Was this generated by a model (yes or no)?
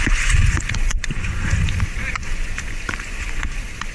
yes